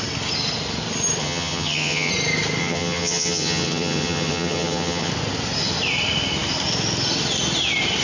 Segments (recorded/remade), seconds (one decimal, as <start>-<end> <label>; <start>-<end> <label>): 0.0-1.2 recorded; 1.2-2.1 remade; 2.1-2.6 recorded; 2.6-5.1 remade; 5.1-8.0 recorded